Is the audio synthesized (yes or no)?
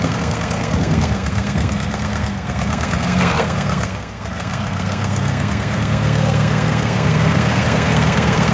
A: yes